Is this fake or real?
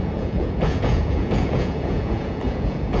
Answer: fake